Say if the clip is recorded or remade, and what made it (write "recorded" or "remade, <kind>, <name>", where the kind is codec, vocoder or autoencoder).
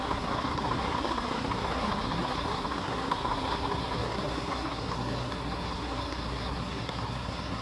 remade, codec, SNAC